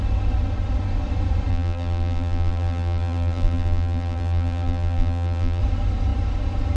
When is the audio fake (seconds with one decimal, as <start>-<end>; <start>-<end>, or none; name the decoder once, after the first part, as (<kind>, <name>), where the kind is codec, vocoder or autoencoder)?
1.5-5.6 (vocoder, BigVGAN v2)